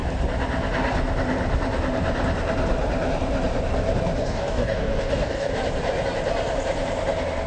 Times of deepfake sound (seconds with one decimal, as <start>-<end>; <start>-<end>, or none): 4.2-5.5